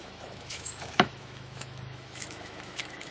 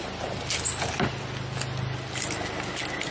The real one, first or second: second